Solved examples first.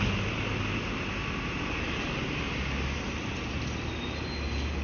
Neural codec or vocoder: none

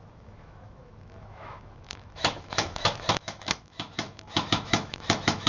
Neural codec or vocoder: autoencoder, DAC-VAE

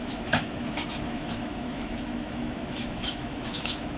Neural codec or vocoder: autoencoder, DAC-VAE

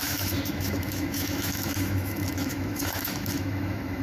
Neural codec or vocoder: autoencoder, DAC-VAE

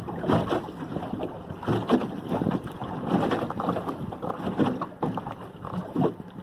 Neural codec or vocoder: none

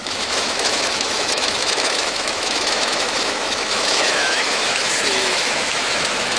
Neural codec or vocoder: autoencoder, DAC-VAE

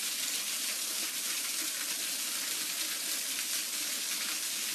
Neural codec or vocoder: none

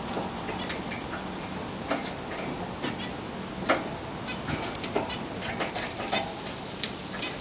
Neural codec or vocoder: none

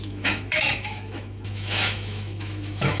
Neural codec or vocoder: autoencoder, DAC-VAE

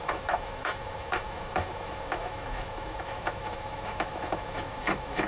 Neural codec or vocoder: autoencoder, DAC-VAE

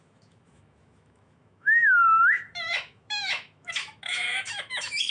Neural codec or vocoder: autoencoder, DAC-VAE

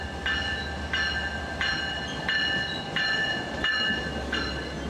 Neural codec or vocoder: none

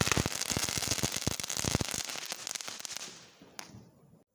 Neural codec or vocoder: none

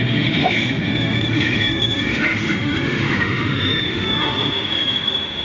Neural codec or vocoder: autoencoder, DAC-VAE